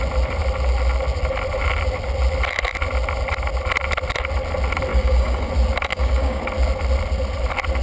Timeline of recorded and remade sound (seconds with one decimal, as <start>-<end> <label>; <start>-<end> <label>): 0.0-4.9 recorded; 4.9-5.5 remade; 5.5-5.9 recorded; 5.9-6.4 remade; 6.4-7.8 recorded